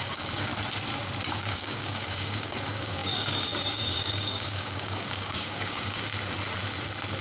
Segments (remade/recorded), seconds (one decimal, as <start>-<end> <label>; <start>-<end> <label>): 0.0-0.5 remade; 0.5-1.3 recorded; 1.3-6.1 remade; 6.1-7.2 recorded